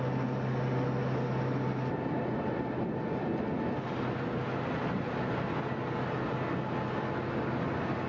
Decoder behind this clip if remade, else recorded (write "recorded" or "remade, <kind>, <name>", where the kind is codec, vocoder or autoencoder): recorded